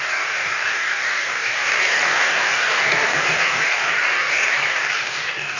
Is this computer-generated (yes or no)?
yes